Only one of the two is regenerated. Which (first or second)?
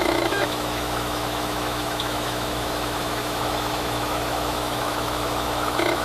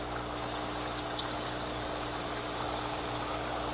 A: first